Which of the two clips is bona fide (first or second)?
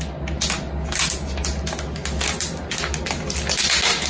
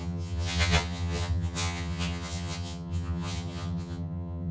first